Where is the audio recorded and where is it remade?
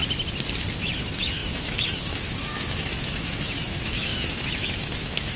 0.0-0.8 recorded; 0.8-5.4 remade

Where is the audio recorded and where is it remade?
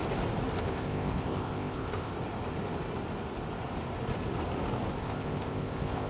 0.0-0.6 recorded; 0.6-2.1 remade; 2.1-5.0 recorded; 5.0-6.1 remade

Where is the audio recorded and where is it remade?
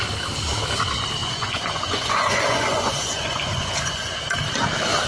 0.0-1.2 recorded; 1.2-4.2 remade; 4.2-5.1 recorded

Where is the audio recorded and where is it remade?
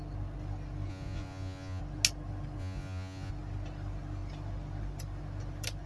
0.0-0.9 recorded; 0.9-1.8 remade; 1.8-2.6 recorded; 2.6-3.3 remade; 3.3-5.9 recorded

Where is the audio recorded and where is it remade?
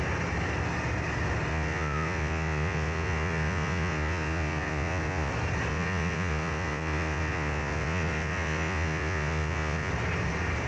0.0-1.5 recorded; 1.5-5.3 remade; 5.3-5.7 recorded; 5.7-9.9 remade; 9.9-10.7 recorded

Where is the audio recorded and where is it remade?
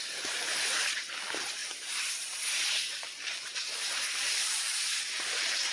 0.0-5.7 recorded